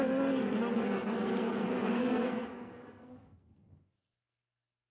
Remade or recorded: remade